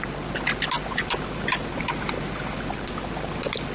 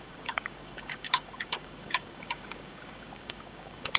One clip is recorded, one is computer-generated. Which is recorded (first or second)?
first